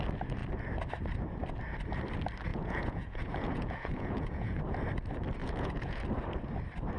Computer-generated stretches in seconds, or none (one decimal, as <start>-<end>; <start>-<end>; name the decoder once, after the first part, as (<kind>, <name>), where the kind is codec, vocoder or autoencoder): 2.5-4.6 (vocoder, Vocos); 5.4-6.0